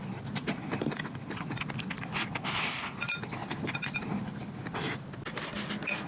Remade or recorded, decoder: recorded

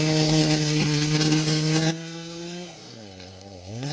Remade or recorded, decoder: remade, codec, SNAC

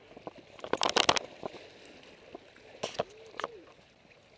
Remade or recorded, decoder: recorded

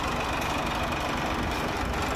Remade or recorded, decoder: recorded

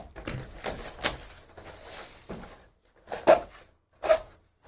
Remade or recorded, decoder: recorded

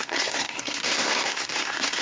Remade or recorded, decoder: remade, codec, SNAC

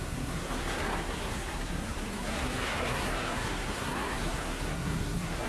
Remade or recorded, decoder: remade, codec, SNAC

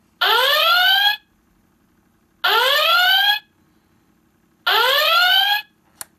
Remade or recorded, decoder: recorded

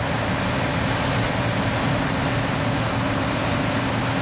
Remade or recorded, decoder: recorded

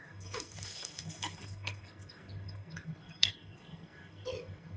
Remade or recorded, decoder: remade, codec, SNAC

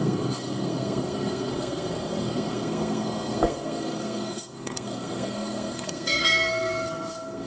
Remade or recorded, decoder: remade, codec, SNAC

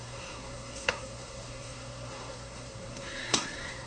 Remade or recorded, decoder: remade, codec, SNAC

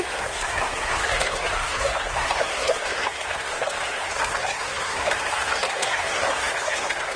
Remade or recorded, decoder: remade, codec, SNAC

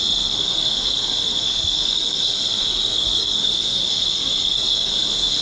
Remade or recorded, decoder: remade, codec, SNAC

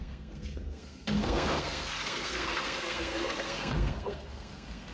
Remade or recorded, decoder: remade, codec, SNAC